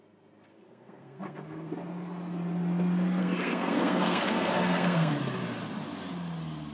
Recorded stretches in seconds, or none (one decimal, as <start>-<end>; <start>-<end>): 0.0-0.5; 1.7-3.2; 5.1-6.7